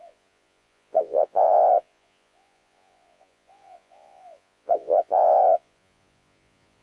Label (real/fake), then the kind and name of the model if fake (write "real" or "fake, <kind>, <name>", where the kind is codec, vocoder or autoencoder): fake, vocoder, Vocos